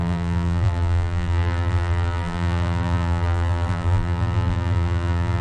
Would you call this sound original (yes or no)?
no